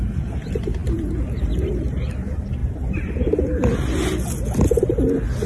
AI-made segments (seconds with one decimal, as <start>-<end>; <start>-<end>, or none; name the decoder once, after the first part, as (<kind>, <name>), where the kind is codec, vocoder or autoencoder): 0.0-2.6 (vocoder, BigVGAN v2); 3.1-3.6